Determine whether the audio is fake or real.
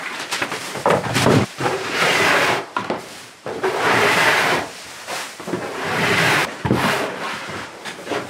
fake